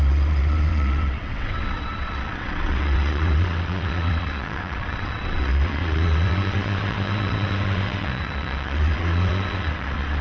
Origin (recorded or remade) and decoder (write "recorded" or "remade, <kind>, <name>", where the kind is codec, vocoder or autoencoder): remade, vocoder, WaveNeXt